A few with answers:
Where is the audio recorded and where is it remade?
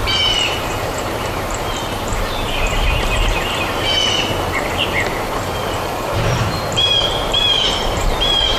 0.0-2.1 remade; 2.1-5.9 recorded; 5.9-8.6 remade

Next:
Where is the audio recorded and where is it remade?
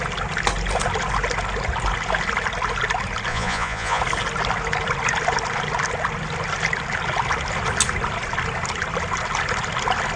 0.0-3.3 recorded; 3.3-4.0 remade; 4.0-10.2 recorded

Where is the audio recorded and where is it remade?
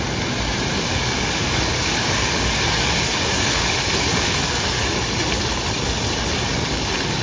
0.0-0.9 recorded; 0.9-4.8 remade; 4.8-7.2 recorded